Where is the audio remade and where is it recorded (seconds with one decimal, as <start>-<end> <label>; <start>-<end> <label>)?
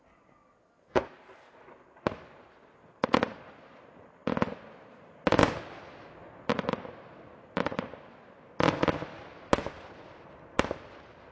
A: 0.0-11.3 recorded